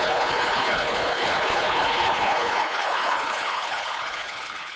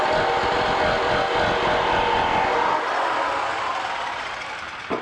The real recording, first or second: second